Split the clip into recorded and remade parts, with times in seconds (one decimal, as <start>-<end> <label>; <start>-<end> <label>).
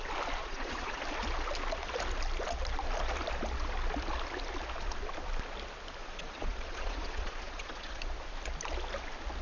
0.0-0.4 recorded; 0.4-1.0 remade; 1.0-6.0 recorded; 6.0-8.0 remade; 8.0-9.4 recorded